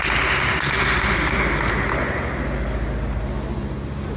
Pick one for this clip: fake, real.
real